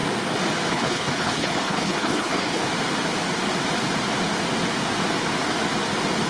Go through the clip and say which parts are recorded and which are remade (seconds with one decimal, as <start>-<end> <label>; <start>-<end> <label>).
0.0-0.7 recorded; 0.7-2.6 remade; 2.6-6.3 recorded